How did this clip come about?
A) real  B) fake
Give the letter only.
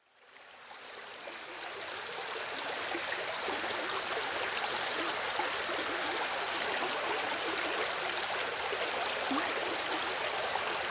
A